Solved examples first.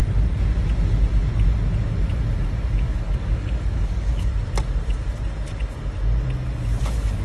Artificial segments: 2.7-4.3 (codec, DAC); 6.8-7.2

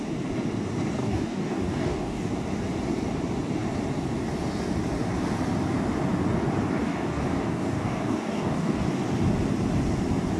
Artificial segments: 1.0-2.3 (codec, DAC); 6.8-8.8

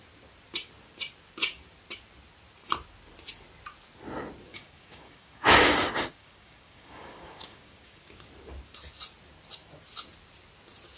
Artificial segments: 4.5-8.3 (codec, DAC)

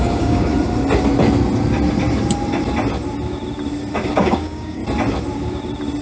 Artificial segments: 0.0-0.5 (codec, DAC); 4.1-4.8